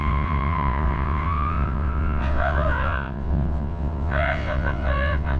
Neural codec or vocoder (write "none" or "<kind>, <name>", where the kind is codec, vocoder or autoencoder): vocoder, WaveNeXt